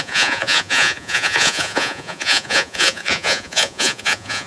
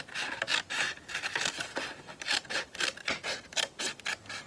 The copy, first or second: first